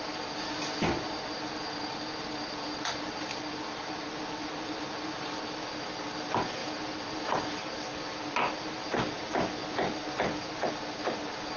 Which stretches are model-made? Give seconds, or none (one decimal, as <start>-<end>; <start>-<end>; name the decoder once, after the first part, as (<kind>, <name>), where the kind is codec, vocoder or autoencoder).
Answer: none